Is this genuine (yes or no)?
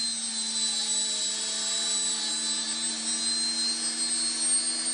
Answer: yes